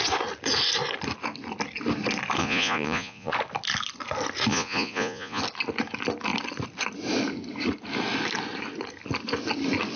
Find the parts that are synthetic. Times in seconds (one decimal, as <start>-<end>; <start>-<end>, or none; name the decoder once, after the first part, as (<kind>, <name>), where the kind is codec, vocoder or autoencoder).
2.4-3.3 (vocoder, Vocos); 4.5-5.4